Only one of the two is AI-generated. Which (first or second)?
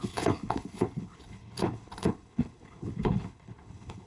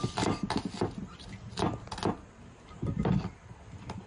first